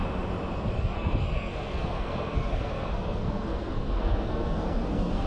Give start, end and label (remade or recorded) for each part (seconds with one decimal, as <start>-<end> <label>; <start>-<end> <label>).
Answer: 0.0-0.8 recorded; 0.8-5.3 remade